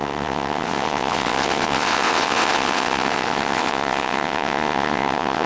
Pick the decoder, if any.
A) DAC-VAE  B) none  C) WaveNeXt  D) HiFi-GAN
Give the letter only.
C